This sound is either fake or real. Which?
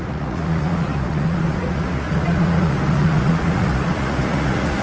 fake